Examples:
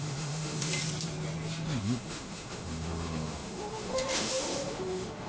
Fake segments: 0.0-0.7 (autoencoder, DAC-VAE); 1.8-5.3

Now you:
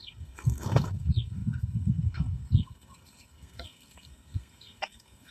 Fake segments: 0.0-5.3 (codec, SNAC)

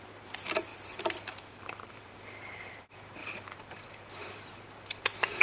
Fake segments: 0.0-5.4 (vocoder, BigVGAN v2)

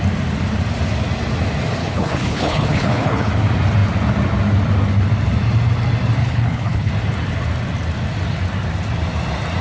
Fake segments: 1.8-3.3 (codec, HILCodec); 6.2-6.9

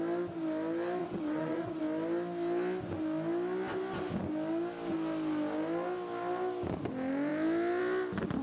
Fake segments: 1.0-1.8 (vocoder, WaveNeXt)

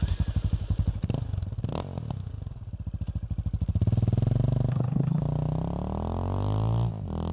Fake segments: 4.7-5.2 (codec, SNAC)